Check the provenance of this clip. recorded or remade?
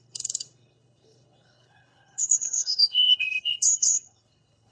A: remade